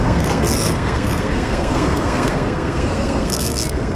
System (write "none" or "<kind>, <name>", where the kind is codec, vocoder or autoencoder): codec, SNAC